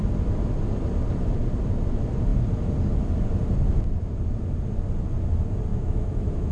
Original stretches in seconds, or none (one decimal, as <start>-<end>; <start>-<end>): 0.0-5.7